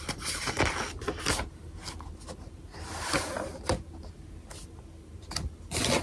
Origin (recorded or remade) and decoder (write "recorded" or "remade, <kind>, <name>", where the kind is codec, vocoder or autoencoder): recorded